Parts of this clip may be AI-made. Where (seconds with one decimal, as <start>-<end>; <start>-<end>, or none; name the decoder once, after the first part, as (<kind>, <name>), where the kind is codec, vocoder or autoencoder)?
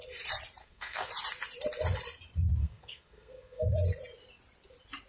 0.6-1.1 (codec, SNAC); 2.6-3.7